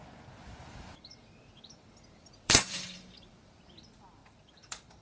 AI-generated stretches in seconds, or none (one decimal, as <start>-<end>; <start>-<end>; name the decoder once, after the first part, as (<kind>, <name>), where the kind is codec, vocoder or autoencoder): 0.6-3.6 (vocoder, BigVGAN v2); 4.2-5.0

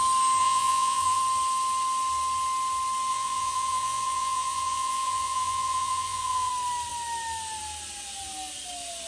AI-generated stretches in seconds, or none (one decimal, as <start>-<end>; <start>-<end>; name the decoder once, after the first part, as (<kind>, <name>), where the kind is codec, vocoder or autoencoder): 0.4-1.2 (vocoder, Vocos); 3.1-6.5

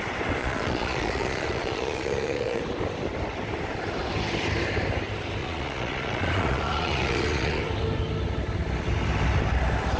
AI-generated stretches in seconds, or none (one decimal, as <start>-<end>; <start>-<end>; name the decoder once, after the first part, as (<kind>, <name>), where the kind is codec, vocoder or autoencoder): 0.4-2.6 (vocoder, Vocos); 5.4-7.6

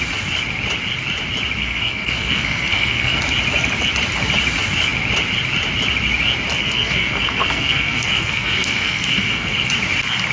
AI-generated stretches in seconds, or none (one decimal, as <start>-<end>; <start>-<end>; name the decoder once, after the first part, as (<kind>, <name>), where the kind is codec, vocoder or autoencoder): 1.6-3.2 (codec, SNAC); 6.6-9.7

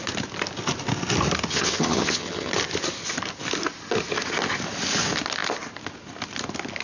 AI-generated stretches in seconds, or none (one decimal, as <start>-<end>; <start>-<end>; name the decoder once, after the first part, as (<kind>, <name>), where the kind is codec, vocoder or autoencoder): 1.5-2.5 (vocoder, HiFi-GAN)

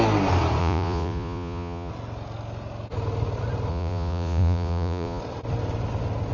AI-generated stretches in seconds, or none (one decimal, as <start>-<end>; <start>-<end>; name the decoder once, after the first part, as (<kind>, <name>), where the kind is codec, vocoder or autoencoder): 0.6-1.9 (vocoder, Vocos); 3.7-5.2